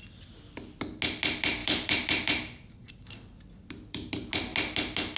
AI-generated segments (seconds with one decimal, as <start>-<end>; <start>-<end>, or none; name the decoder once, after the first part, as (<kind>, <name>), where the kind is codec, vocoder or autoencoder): 1.6-4.1 (vocoder, BigVGAN v2)